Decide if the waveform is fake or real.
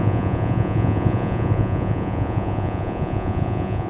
fake